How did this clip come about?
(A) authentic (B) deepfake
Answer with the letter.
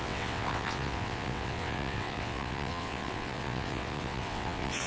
B